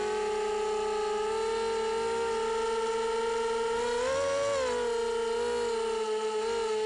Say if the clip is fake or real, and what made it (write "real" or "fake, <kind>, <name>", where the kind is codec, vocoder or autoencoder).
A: real